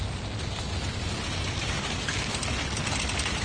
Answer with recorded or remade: recorded